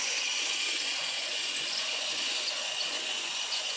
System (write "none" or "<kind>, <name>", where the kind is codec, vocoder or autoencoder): vocoder, Vocos